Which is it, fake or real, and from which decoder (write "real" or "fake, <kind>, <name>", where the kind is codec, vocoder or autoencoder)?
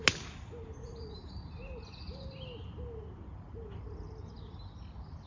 real